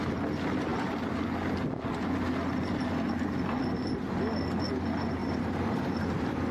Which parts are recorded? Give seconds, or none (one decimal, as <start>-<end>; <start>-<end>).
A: 0.0-5.2; 5.8-6.5